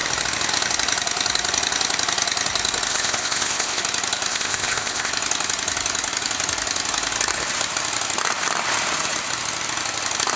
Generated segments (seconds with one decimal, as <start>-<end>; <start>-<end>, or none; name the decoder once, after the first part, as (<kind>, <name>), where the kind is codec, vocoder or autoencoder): 2.9-3.8 (codec, ZipCodec); 4.3-5.1